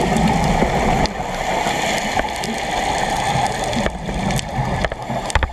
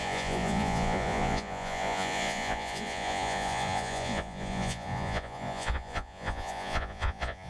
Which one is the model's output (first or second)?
second